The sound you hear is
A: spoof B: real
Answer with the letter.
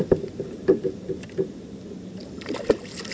B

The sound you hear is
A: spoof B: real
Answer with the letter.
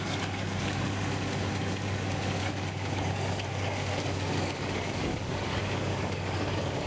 A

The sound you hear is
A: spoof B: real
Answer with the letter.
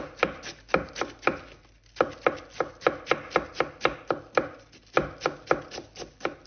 B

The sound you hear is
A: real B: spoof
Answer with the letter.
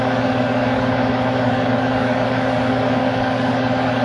B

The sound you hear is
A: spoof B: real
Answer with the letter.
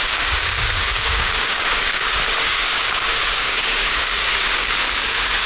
A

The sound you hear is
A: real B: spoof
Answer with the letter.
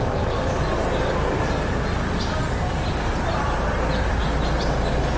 A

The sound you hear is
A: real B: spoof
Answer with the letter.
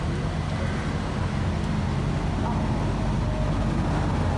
A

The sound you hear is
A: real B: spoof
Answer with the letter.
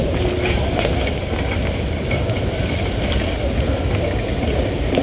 A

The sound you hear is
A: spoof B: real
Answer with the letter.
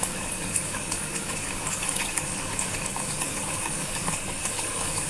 A